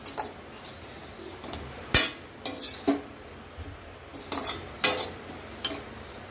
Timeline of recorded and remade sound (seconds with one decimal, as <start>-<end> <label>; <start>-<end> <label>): 0.0-6.3 recorded